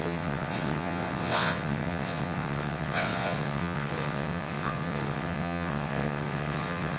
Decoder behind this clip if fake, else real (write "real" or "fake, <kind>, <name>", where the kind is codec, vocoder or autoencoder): fake, vocoder, WaveNeXt